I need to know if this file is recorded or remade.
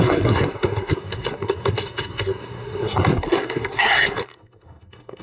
remade